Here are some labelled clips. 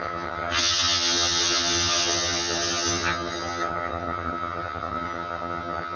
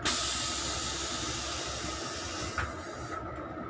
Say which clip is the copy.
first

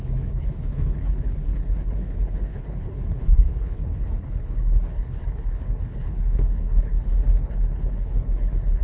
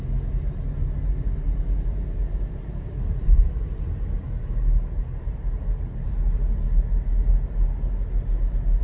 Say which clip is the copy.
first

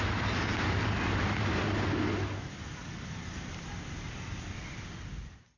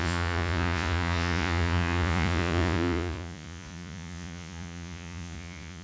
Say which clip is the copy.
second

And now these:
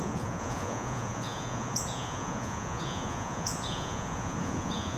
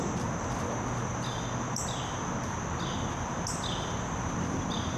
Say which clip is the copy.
first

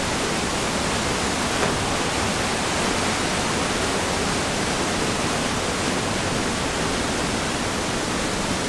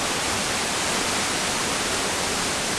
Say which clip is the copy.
second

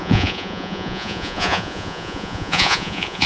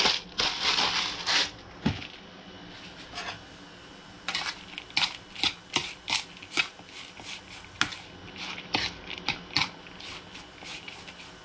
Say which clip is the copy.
first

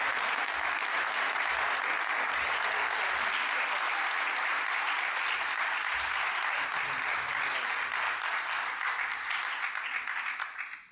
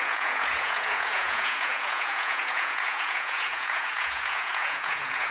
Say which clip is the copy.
second